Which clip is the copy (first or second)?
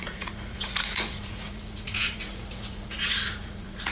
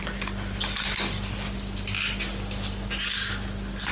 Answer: first